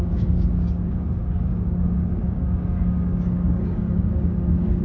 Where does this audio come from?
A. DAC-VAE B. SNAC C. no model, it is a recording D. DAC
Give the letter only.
D